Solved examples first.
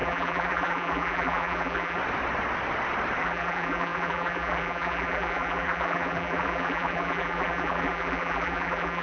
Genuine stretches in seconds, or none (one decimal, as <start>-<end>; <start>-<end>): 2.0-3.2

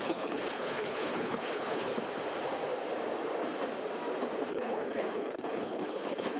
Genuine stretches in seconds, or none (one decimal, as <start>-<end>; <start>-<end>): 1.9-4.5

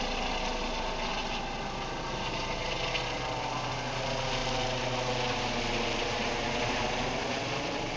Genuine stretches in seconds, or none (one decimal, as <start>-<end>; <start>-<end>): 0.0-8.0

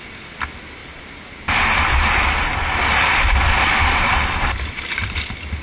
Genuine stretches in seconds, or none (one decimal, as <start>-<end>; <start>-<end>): 0.0-5.6

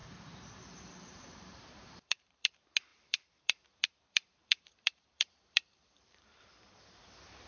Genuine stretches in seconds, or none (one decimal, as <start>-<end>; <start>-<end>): 2.5-2.9; 6.5-7.5